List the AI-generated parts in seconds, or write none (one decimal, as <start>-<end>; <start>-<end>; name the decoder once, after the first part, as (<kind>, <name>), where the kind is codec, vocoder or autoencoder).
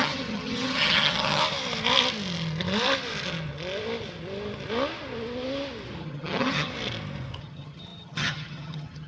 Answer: 0.0-1.4 (vocoder, HiFi-GAN); 6.0-6.7; 7.4-9.1